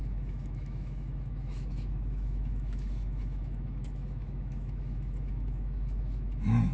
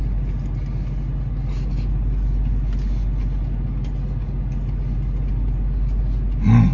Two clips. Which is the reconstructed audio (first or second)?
first